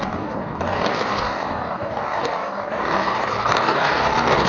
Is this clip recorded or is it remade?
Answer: remade